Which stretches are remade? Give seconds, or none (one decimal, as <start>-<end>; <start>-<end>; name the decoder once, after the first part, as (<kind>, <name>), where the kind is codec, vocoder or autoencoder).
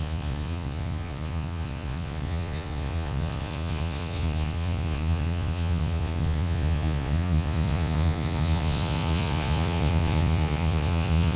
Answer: 0.0-11.4 (vocoder, Vocos)